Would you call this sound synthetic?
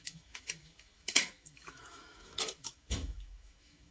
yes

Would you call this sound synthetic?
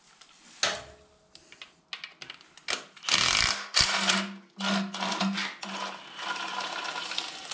no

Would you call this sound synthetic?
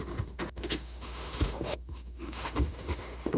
yes